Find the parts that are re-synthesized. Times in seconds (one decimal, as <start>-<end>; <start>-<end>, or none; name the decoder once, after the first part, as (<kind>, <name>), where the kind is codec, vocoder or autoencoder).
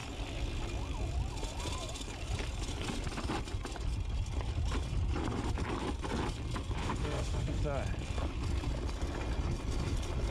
6.8-7.6 (autoencoder, DAC-VAE)